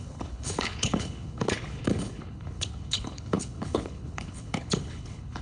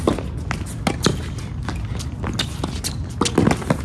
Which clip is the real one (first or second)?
second